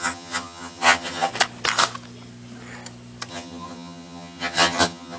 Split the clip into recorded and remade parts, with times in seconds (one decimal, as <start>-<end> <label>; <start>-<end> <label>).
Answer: 0.0-1.3 remade; 1.3-3.3 recorded; 3.3-5.2 remade